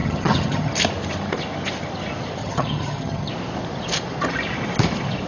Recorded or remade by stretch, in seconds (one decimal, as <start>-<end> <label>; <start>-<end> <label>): 0.0-0.7 remade; 0.7-2.4 recorded; 2.4-3.3 remade; 3.3-5.3 recorded